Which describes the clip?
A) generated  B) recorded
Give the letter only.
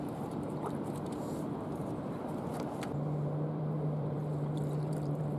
A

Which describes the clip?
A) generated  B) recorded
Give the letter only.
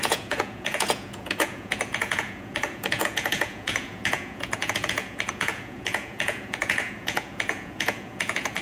A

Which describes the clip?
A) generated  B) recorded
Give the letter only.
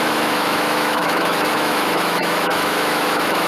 A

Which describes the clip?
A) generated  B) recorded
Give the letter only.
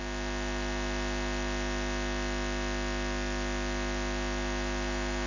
B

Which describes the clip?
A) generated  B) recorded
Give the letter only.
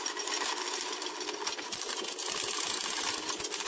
B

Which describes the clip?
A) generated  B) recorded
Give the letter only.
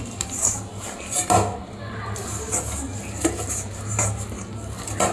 B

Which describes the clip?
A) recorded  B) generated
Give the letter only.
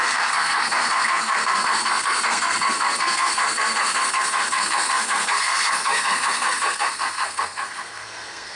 B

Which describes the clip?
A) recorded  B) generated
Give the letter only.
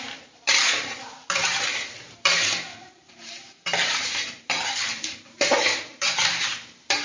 B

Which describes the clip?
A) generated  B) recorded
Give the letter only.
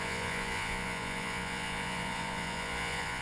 A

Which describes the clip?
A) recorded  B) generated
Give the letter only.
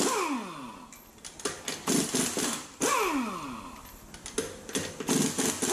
A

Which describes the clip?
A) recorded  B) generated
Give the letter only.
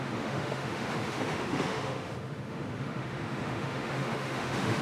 B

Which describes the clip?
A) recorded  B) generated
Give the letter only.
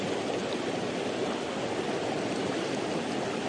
A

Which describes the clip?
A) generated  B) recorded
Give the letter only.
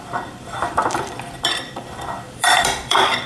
A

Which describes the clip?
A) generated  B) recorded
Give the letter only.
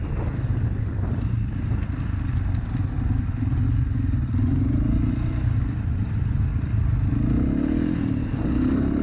B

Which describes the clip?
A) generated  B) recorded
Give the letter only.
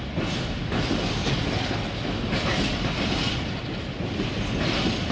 B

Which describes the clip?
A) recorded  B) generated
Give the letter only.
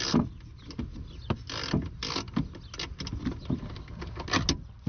A